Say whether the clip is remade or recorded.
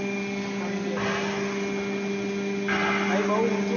recorded